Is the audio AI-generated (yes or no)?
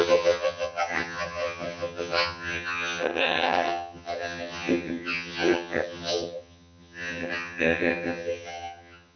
yes